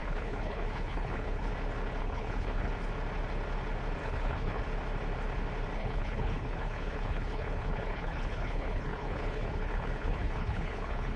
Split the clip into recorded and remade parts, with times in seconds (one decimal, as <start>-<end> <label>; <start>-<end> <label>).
0.0-1.5 remade; 1.5-2.0 recorded; 2.0-2.7 remade; 2.7-4.0 recorded; 4.0-4.6 remade; 4.6-5.8 recorded; 5.8-11.2 remade